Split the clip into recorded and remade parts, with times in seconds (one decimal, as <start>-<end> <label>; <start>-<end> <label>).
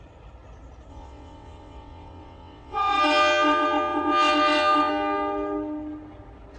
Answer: 0.0-0.9 recorded; 0.9-4.9 remade; 4.9-6.6 recorded